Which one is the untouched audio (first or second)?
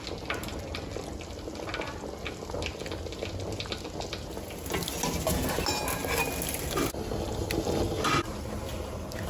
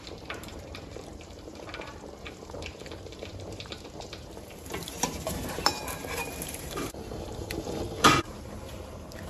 first